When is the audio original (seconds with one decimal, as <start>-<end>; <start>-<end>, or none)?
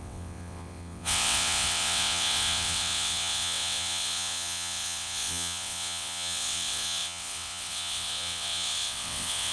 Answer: none